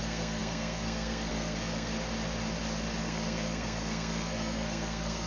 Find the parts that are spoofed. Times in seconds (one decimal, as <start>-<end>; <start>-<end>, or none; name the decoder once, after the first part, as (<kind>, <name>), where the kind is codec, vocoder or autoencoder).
0.0-1.9 (codec, SNAC); 3.0-5.3